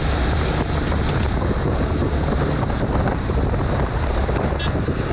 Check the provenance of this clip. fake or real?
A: real